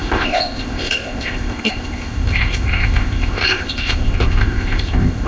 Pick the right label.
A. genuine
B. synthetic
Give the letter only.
B